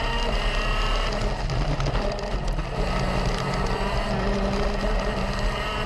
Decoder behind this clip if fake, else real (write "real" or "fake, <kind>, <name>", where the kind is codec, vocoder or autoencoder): real